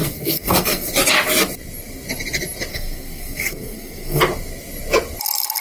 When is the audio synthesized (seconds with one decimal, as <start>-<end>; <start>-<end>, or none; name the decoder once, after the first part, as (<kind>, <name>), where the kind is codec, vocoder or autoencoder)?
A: 0.0-0.9 (codec, SNAC); 2.7-4.2